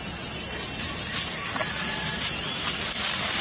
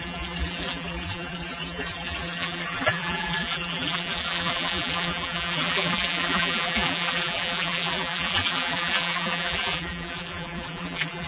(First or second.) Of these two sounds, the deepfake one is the second